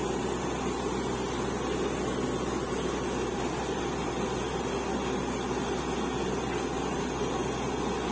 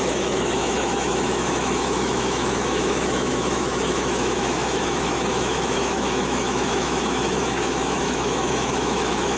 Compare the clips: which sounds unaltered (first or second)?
first